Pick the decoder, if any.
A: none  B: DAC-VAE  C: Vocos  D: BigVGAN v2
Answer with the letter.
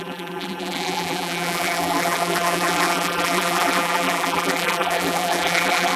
D